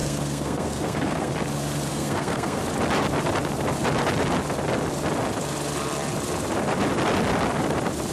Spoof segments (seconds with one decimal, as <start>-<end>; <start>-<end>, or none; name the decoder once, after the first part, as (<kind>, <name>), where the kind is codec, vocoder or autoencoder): 0.0-1.3 (codec, SNAC); 1.9-2.6